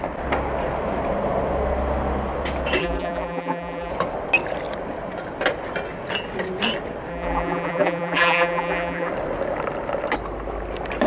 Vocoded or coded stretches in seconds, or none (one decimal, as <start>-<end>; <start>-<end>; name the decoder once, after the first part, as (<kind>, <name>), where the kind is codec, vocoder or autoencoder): 2.8-3.9 (vocoder, BigVGAN v2); 7.1-9.1